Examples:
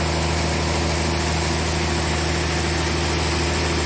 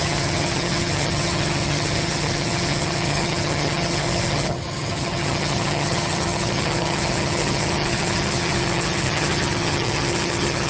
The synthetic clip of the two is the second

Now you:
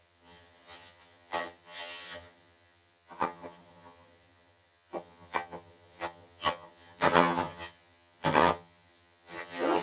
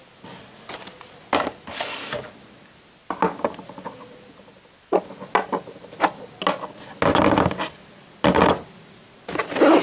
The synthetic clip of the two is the first